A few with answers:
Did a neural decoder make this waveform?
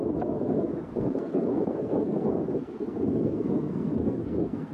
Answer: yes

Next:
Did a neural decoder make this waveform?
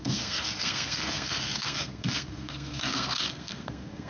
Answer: yes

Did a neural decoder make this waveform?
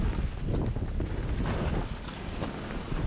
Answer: no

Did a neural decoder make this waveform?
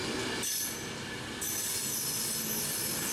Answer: no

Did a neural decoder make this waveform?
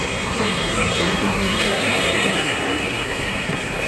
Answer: yes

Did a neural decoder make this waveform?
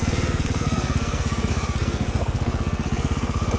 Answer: yes